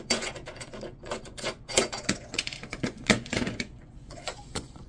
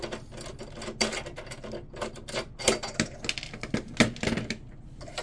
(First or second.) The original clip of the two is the second